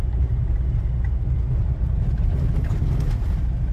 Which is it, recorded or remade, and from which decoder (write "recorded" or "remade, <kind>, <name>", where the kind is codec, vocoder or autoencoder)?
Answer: recorded